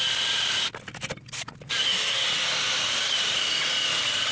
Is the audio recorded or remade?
recorded